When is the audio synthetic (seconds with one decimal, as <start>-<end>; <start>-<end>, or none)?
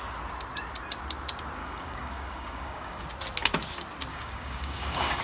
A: 1.6-3.0; 4.1-5.2